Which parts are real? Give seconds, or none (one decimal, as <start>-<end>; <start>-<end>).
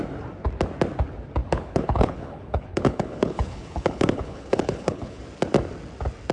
0.0-1.4; 5.2-6.3